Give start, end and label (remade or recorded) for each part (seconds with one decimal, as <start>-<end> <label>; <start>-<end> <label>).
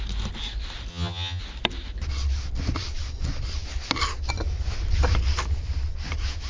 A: 0.0-0.9 recorded; 0.9-1.4 remade; 1.4-6.5 recorded